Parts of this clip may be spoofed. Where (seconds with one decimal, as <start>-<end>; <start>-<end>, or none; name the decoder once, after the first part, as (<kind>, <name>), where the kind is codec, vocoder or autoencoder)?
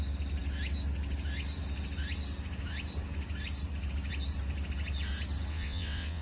5.5-6.2 (vocoder, WaveNeXt)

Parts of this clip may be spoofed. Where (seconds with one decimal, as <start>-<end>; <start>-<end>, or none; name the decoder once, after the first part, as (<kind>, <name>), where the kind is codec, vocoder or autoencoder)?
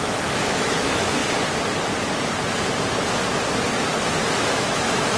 0.0-1.2 (autoencoder, DAC-VAE); 4.3-5.2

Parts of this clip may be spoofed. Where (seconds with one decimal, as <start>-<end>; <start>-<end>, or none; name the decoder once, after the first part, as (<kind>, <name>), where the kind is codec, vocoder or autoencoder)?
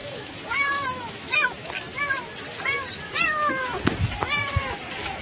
0.0-1.7 (autoencoder, DAC-VAE)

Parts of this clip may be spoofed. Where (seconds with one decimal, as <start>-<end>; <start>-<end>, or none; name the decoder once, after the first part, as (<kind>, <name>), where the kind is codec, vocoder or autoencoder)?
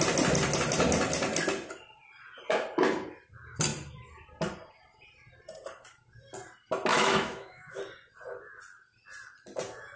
6.9-7.8 (autoencoder, DAC-VAE)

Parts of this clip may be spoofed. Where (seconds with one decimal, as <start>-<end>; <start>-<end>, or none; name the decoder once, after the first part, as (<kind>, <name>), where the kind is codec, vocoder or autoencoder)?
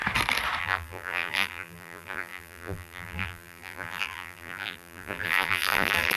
0.6-6.2 (vocoder, BigVGAN v2)